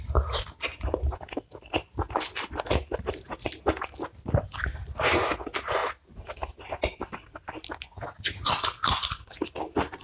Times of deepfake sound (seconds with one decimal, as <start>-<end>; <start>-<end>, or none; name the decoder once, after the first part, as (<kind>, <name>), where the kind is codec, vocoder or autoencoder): 5.8-6.6 (vocoder, BigVGAN v2)